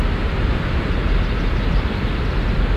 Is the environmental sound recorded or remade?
recorded